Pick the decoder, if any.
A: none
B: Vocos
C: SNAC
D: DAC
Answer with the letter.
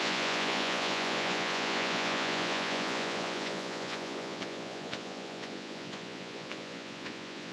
B